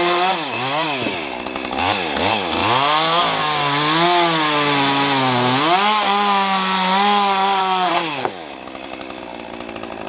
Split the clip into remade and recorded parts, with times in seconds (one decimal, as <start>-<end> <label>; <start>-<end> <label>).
0.0-7.6 recorded; 7.6-8.3 remade; 8.3-10.1 recorded